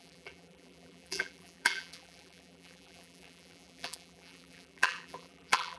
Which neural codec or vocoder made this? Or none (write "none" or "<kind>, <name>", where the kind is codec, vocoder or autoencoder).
vocoder, BigVGAN v2